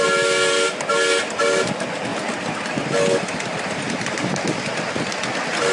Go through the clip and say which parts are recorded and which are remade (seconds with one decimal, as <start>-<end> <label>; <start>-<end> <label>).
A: 0.0-5.7 recorded

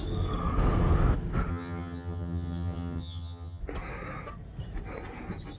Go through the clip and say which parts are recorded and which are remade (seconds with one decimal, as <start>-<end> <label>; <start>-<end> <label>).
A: 0.0-1.5 recorded; 1.5-3.6 remade; 3.6-5.6 recorded

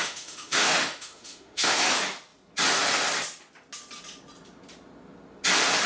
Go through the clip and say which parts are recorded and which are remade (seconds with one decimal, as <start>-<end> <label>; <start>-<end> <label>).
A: 0.0-1.8 remade; 1.8-5.9 recorded

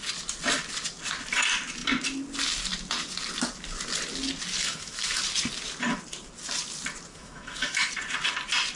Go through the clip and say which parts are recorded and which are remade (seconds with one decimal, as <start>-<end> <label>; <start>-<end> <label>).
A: 0.0-4.6 recorded; 4.6-5.2 remade; 5.2-7.1 recorded; 7.1-7.9 remade; 7.9-8.8 recorded

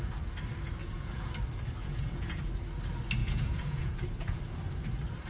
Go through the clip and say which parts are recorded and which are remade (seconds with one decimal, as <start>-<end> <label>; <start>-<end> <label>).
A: 0.0-0.8 recorded; 0.8-1.3 remade; 1.3-1.8 recorded; 1.8-2.4 remade; 2.4-3.2 recorded; 3.2-4.4 remade; 4.4-5.3 recorded